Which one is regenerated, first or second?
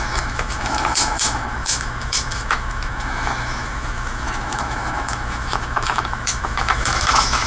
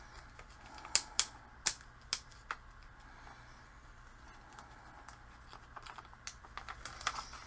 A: first